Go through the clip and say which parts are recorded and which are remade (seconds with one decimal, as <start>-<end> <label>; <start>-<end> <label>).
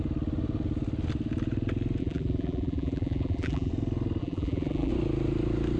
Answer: 0.0-2.0 recorded; 2.0-3.7 remade; 3.7-4.2 recorded; 4.2-4.9 remade; 4.9-5.8 recorded